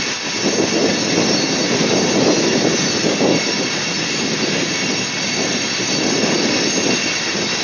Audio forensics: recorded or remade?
recorded